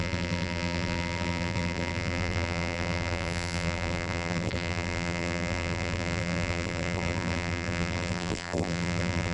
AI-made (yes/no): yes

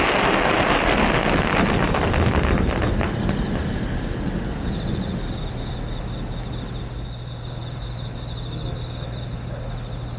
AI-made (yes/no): no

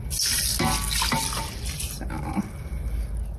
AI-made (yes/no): no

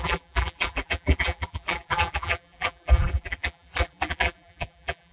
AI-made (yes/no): yes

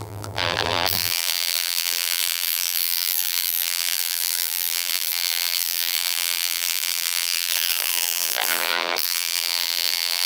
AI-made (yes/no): yes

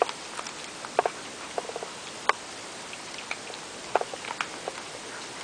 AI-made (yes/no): no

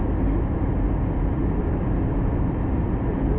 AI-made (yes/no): no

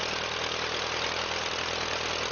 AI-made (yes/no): no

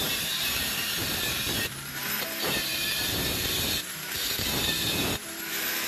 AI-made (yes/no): yes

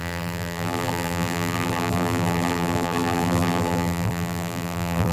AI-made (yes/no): yes